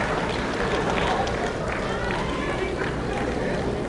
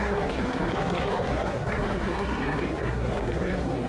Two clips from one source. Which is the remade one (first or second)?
second